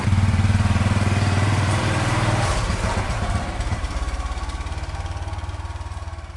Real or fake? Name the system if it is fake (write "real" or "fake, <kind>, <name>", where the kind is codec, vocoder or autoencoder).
fake, vocoder, BigVGAN v2